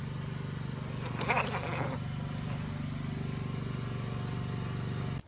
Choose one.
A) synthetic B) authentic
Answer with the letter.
B